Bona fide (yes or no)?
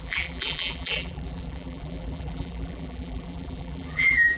no